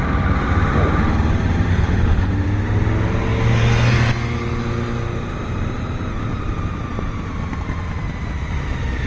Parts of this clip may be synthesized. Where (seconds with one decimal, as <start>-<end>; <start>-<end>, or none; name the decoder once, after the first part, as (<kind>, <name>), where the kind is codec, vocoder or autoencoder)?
1.7-2.3 (codec, HILCodec)